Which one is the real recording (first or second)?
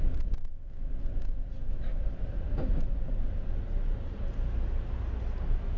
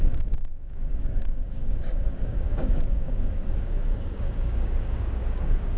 first